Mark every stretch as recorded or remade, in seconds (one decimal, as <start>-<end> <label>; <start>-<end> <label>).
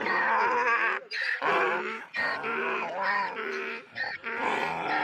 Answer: 0.0-3.7 remade; 3.7-5.0 recorded